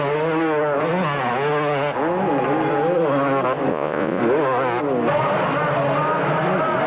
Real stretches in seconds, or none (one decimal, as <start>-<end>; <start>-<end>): 0.0-3.7; 4.2-6.9